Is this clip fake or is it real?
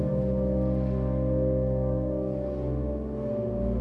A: real